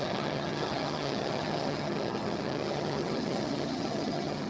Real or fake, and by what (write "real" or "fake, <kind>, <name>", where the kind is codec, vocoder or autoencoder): fake, vocoder, HiFi-GAN